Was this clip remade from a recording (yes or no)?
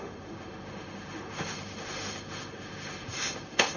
yes